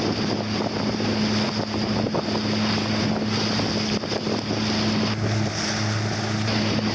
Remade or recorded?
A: recorded